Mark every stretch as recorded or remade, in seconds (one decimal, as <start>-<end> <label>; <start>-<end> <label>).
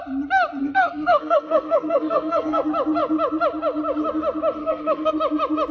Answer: 0.0-0.6 recorded; 0.6-2.6 remade; 2.6-4.6 recorded; 4.6-5.1 remade; 5.1-5.7 recorded